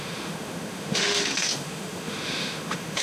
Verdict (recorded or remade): remade